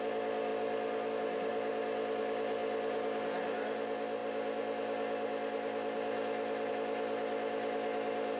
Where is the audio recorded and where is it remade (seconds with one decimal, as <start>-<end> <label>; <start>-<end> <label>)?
0.0-8.4 recorded